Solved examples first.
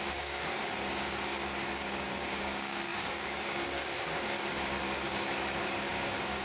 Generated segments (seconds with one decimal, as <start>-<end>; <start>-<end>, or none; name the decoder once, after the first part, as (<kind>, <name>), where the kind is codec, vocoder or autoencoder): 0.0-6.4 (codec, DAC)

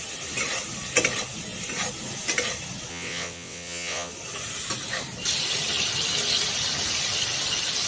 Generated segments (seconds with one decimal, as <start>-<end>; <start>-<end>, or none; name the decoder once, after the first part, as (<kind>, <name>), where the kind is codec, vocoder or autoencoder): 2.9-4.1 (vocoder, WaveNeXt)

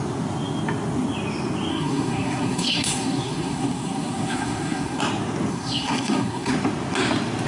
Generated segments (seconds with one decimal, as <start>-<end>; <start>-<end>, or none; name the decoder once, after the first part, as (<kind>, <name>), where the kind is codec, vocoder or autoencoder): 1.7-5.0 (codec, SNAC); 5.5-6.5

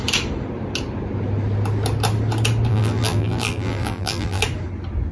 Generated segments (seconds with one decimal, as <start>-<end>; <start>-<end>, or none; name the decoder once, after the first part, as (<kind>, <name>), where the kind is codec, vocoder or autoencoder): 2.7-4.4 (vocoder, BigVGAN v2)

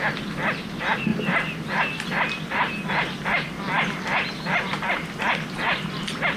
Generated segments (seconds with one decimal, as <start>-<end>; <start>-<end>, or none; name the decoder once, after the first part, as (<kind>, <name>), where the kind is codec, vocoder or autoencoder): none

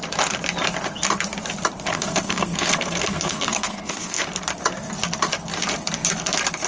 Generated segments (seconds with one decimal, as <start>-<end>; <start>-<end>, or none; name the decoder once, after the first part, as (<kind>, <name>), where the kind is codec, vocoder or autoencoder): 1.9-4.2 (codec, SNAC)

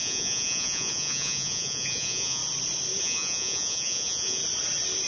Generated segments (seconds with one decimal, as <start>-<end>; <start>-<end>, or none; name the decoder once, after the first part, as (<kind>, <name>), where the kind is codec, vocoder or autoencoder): 0.0-2.4 (vocoder, Vocos); 3.0-4.4

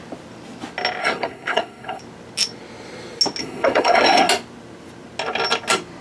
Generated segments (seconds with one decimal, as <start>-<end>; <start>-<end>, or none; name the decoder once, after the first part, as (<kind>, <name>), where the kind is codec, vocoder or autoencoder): 1.0-2.0 (codec, SNAC); 3.4-4.3